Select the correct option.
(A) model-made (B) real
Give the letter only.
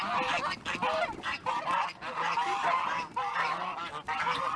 B